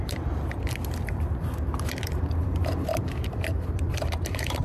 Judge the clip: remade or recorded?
remade